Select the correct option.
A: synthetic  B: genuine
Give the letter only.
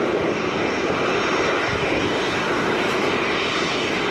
B